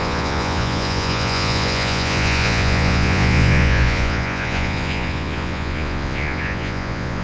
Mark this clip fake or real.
fake